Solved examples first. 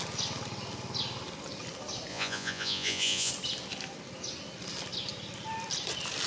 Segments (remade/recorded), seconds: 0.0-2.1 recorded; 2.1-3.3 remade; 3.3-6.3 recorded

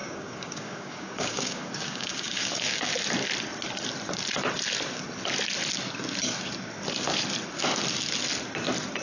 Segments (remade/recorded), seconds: 0.0-2.9 remade; 2.9-9.0 recorded

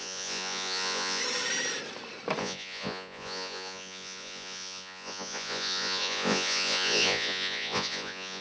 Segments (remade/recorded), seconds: 0.0-1.2 remade; 1.2-2.4 recorded; 2.4-8.4 remade

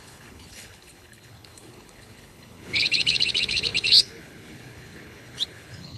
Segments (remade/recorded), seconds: 0.0-6.0 remade